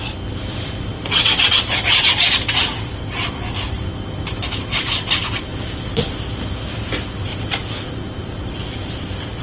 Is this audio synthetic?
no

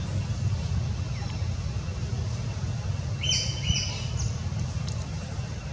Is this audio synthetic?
no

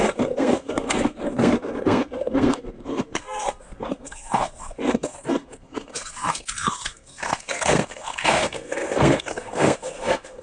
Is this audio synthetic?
yes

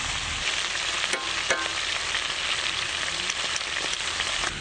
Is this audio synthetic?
no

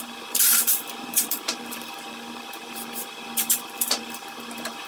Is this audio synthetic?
yes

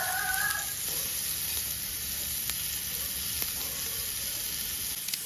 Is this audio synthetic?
no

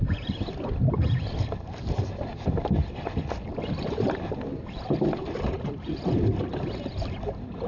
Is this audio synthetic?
no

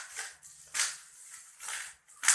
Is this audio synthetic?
no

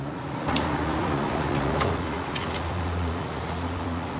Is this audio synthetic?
yes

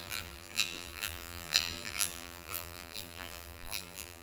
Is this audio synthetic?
yes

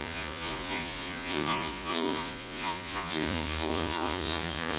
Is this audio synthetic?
yes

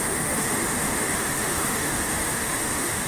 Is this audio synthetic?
yes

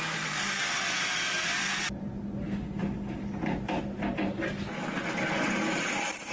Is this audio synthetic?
no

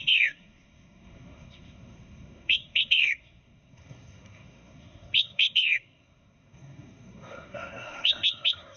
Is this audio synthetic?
yes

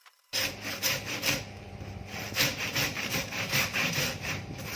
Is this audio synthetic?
yes